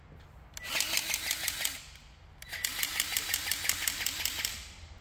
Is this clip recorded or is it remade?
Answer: recorded